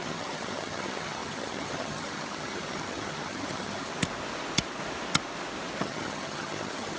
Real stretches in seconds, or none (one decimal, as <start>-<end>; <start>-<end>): 3.9-5.8